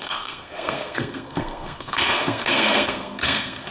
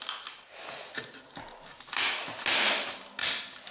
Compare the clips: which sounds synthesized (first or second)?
first